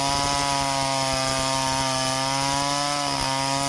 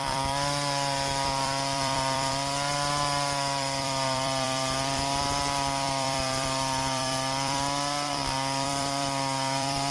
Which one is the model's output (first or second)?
second